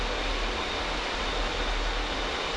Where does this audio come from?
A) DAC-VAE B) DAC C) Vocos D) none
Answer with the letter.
D